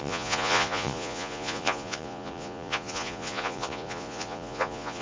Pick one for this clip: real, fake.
fake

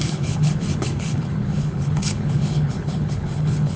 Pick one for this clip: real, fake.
fake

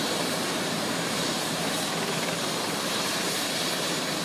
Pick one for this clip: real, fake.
fake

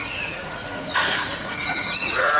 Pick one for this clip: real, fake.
fake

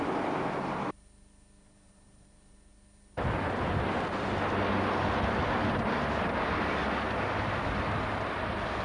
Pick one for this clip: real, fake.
real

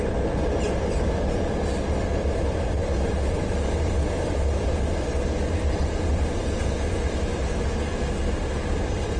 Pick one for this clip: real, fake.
real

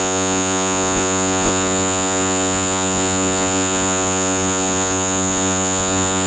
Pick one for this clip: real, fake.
fake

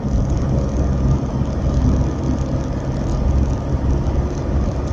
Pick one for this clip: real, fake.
real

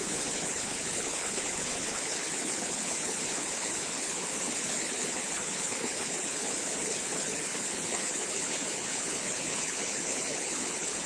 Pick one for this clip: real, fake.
fake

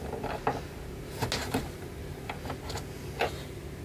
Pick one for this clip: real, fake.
real